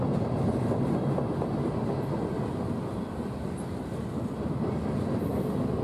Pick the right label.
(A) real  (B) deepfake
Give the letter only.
A